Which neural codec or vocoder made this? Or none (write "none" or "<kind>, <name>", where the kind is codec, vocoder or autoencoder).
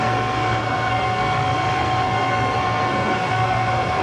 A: codec, SNAC